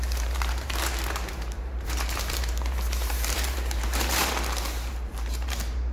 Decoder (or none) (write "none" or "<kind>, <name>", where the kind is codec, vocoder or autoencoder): vocoder, BigVGAN v2